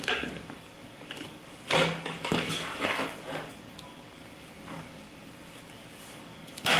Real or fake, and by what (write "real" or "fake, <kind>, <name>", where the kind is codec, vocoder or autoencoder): fake, codec, DAC